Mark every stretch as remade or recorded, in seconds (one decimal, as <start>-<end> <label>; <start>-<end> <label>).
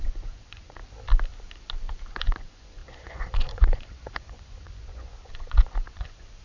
0.0-0.8 remade; 0.8-2.1 recorded; 2.1-6.4 remade